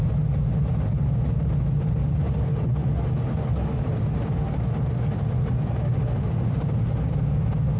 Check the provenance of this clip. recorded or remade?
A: recorded